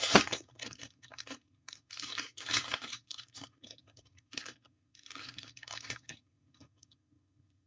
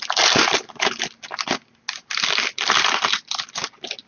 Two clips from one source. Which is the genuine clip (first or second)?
second